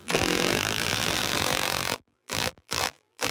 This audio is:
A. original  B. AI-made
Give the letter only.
B